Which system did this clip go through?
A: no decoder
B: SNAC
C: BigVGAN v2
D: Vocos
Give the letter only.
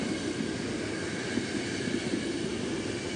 A